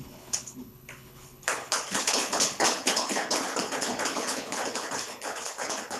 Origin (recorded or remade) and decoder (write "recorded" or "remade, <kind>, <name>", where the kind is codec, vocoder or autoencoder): remade, codec, HILCodec